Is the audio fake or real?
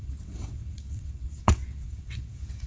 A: fake